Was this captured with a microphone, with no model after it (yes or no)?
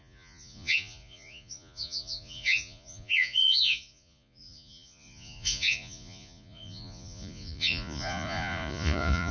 no